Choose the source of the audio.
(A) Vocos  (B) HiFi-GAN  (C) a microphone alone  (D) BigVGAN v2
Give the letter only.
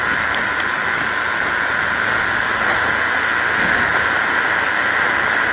C